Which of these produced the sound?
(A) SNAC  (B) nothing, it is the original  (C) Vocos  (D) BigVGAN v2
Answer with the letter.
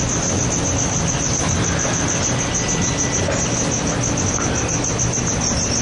B